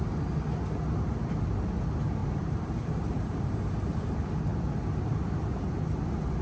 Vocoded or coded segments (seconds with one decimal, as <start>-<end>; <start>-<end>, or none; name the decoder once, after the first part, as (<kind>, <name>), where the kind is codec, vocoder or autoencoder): 2.2-3.6 (vocoder, BigVGAN v2)